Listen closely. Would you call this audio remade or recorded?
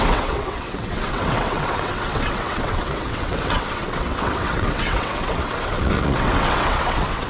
remade